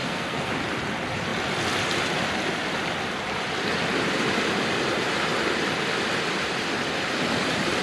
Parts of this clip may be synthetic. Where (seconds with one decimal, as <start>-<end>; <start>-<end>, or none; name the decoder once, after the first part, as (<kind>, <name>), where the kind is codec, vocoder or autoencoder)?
0.0-0.5 (codec, SNAC)